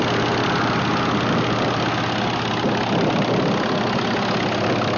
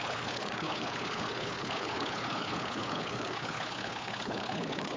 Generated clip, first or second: second